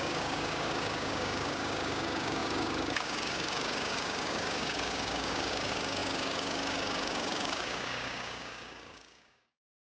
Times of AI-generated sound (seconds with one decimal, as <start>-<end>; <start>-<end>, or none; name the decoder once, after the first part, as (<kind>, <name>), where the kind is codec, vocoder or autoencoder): 0.0-9.9 (codec, DAC)